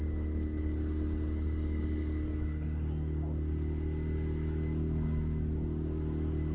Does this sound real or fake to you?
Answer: real